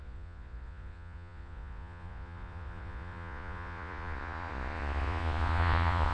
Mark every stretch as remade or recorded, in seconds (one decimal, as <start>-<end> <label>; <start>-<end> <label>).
0.0-6.1 remade